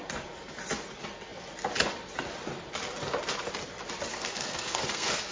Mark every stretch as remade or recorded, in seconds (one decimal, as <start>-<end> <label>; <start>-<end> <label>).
0.0-4.1 recorded; 4.1-5.3 remade